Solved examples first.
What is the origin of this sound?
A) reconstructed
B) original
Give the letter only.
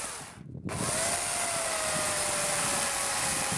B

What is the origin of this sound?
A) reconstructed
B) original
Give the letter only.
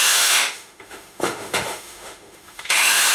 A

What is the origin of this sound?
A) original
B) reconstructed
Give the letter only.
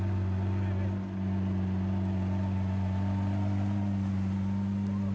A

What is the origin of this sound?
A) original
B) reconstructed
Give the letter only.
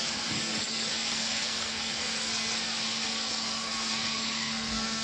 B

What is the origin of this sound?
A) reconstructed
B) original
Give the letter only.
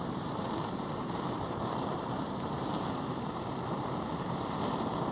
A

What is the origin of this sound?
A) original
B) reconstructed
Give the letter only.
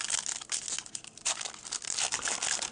A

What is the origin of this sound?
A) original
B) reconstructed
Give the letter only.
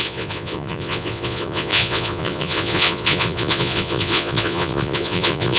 B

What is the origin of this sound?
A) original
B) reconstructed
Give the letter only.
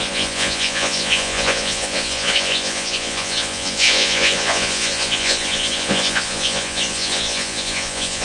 B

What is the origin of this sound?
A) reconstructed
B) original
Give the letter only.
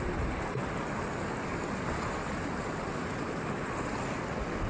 B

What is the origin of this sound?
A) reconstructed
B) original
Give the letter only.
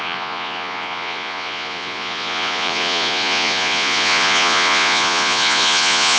A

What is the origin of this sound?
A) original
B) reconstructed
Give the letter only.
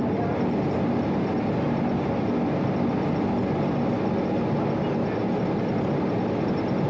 A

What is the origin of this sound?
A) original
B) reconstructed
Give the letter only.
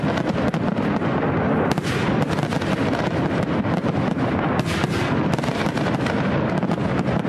A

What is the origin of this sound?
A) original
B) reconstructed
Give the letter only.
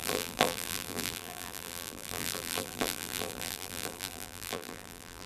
B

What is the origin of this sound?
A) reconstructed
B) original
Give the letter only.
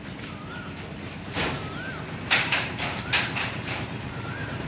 A